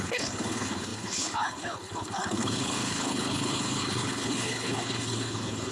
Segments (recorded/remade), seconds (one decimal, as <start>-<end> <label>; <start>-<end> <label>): 0.0-5.7 remade